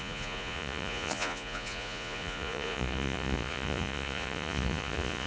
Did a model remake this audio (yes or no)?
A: yes